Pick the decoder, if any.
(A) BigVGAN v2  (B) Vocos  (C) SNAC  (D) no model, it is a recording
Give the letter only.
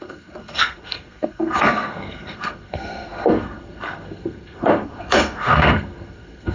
C